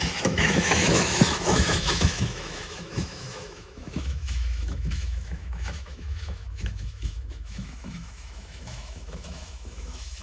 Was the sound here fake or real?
fake